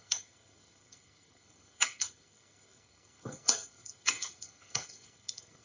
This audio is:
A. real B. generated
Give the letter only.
B